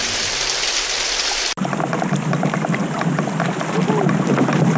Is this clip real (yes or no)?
yes